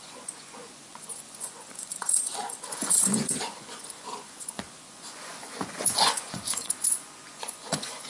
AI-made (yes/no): yes